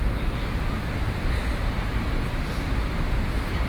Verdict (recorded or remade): recorded